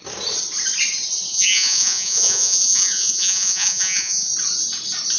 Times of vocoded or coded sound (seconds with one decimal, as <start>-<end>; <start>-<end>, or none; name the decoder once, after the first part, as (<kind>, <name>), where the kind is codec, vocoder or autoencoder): 1.3-4.3 (vocoder, Vocos)